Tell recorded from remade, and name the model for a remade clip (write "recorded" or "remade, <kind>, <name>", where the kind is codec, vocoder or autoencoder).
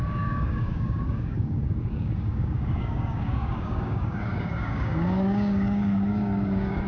remade, codec, DAC